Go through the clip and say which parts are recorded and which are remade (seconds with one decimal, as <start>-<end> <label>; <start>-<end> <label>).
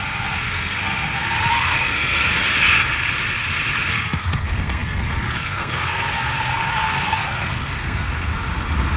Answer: 0.0-2.3 remade; 2.3-3.9 recorded; 3.9-8.3 remade; 8.3-9.0 recorded